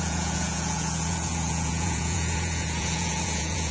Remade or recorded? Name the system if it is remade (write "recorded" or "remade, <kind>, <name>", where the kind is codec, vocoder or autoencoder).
remade, vocoder, Vocos